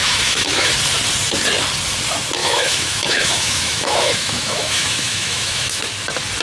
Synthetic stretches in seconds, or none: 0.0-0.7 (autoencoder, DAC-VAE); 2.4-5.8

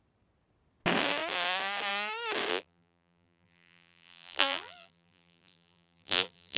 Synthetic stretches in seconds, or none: 2.5-6.6 (vocoder, BigVGAN v2)